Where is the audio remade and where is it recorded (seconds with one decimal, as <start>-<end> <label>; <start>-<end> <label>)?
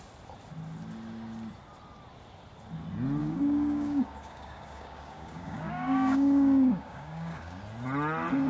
0.0-3.2 recorded; 3.2-7.6 remade; 7.6-8.5 recorded